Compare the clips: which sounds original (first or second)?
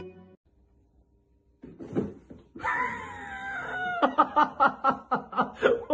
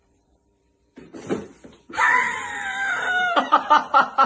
first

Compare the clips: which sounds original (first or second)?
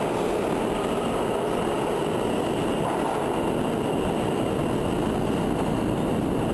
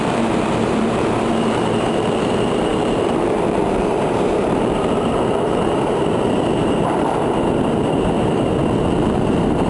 first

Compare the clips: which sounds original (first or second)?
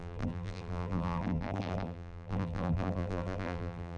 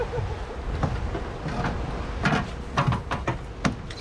second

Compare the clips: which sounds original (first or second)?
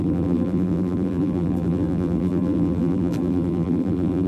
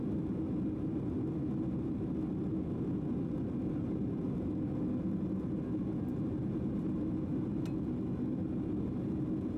second